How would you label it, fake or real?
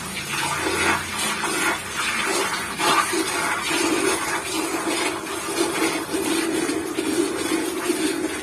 real